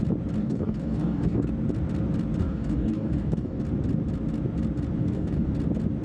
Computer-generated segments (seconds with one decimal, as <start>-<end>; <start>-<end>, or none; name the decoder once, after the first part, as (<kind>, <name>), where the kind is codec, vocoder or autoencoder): 0.4-1.5 (codec, DAC); 2.4-3.6; 5.0-5.5